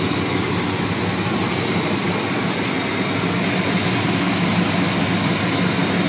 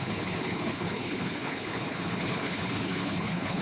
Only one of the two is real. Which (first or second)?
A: first